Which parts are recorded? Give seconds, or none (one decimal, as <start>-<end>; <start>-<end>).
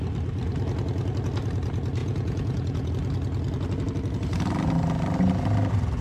0.0-2.0; 2.9-6.0